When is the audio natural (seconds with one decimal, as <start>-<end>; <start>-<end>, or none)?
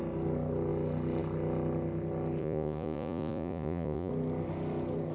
0.0-2.4; 4.1-5.1